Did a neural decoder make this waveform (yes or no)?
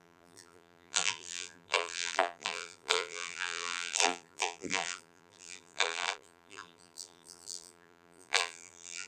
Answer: yes